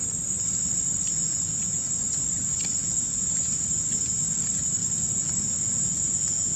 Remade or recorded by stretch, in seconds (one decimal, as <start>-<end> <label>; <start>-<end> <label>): 0.0-1.1 recorded; 1.1-2.0 remade; 2.0-2.8 recorded; 2.8-3.5 remade; 3.5-4.8 recorded; 4.8-6.6 remade